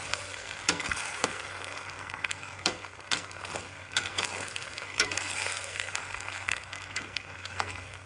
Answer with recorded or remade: remade